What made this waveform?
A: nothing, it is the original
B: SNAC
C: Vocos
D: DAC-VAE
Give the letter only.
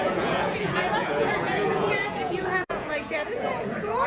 C